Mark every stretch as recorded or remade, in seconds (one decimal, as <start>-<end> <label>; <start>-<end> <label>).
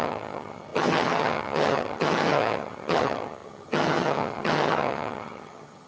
0.0-5.9 remade